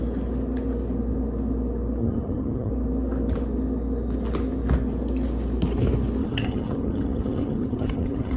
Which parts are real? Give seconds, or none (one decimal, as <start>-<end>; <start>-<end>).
0.0-2.0; 2.7-6.2

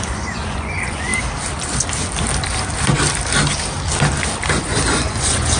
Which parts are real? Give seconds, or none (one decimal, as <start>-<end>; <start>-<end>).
1.1-4.5

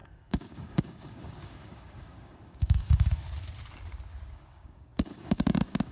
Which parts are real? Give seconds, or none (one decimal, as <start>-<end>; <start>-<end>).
3.2-4.3

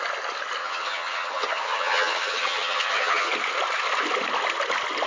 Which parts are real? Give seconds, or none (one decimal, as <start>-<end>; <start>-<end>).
0.0-0.6; 3.3-5.1

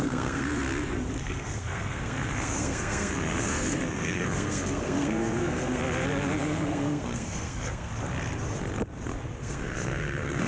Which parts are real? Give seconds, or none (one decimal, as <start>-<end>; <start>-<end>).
0.5-1.2; 5.8-6.4; 7.9-9.4